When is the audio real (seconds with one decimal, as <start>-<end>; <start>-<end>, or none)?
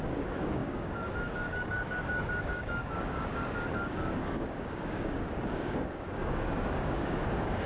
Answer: none